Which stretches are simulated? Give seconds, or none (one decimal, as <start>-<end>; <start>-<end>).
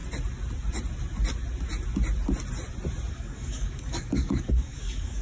3.1-5.2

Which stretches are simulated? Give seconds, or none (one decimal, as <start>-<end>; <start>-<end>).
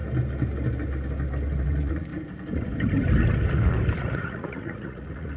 1.6-2.1; 4.0-5.4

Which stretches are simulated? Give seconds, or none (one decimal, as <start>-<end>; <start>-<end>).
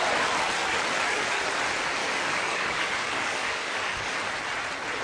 0.6-1.4; 2.0-4.3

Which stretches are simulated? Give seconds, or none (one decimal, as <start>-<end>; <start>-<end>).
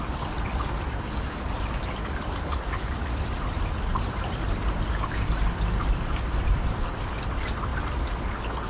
3.9-5.3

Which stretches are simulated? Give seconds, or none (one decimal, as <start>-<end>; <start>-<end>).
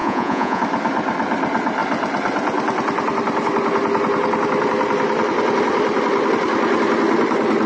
0.0-0.6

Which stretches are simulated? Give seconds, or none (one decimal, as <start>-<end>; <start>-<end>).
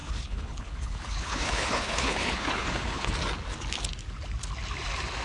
0.0-3.1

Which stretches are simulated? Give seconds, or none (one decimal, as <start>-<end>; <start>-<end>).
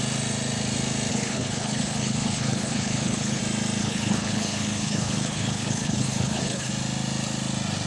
1.1-3.4; 3.8-6.7